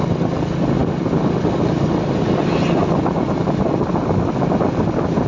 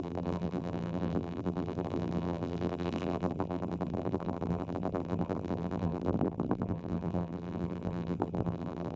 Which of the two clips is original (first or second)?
first